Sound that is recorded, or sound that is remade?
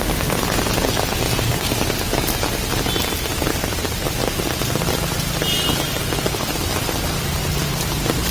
recorded